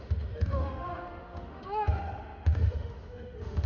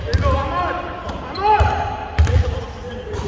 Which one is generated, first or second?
first